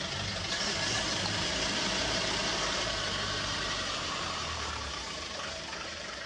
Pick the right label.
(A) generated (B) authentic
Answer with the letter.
A